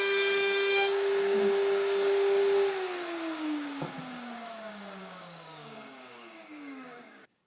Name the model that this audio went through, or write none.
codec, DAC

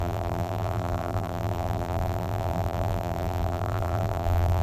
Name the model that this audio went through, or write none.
vocoder, BigVGAN v2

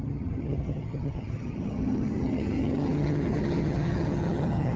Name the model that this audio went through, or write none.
vocoder, HiFi-GAN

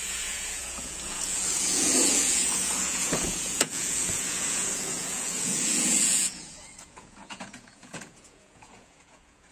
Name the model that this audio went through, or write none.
vocoder, Vocos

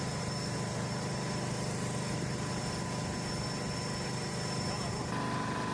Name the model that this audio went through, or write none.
vocoder, BigVGAN v2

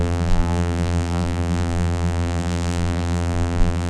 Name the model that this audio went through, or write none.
vocoder, BigVGAN v2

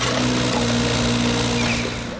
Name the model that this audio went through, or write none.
none